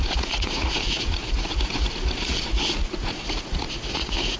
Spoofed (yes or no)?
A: yes